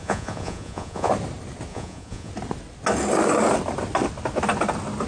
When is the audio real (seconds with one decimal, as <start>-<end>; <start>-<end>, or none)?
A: 1.1-1.7; 2.3-5.1